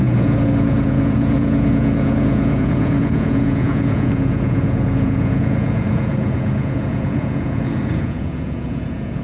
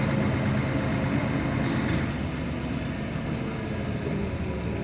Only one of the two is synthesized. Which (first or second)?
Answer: first